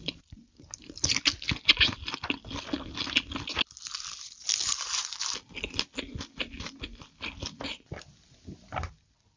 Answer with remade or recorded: recorded